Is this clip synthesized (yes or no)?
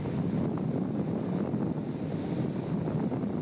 no